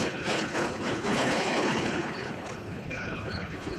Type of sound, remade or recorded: remade